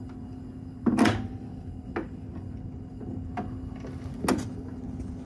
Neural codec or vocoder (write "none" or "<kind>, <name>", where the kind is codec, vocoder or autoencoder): none